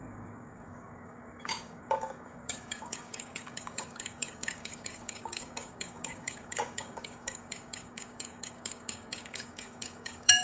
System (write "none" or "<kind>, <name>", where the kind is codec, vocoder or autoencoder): codec, DAC